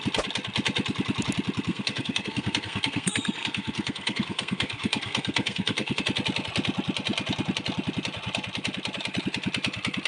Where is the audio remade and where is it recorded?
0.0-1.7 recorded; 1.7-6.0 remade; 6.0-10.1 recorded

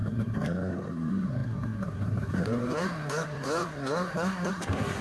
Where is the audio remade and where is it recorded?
0.0-5.0 remade

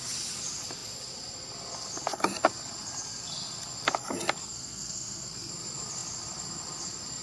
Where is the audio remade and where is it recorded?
0.0-4.4 recorded; 4.4-5.5 remade; 5.5-7.2 recorded

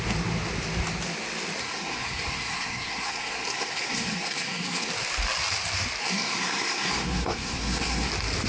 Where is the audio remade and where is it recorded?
0.0-1.6 recorded; 1.6-4.9 remade; 4.9-6.0 recorded; 6.0-8.1 remade; 8.1-8.5 recorded